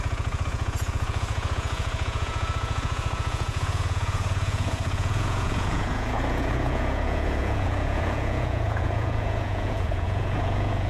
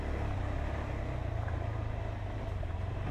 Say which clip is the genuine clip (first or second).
second